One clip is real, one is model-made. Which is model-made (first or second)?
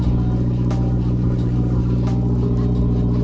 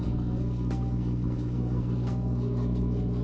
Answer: second